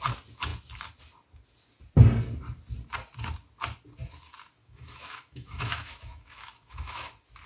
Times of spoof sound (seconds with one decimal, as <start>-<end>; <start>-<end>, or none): 4.6-7.1